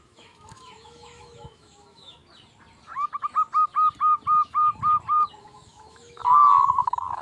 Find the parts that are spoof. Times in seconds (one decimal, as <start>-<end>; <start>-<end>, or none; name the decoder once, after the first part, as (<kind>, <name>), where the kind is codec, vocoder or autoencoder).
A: 0.0-2.2 (autoencoder, DAC-VAE); 5.4-7.2